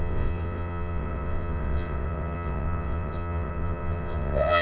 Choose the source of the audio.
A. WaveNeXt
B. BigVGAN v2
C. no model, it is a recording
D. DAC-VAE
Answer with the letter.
A